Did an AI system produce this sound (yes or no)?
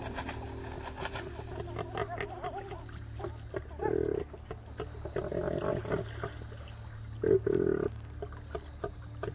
no